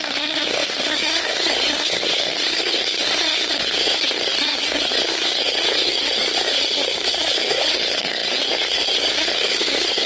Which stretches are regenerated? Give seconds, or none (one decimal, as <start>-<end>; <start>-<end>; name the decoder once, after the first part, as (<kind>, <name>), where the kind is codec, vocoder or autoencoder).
0.0-10.1 (codec, SNAC)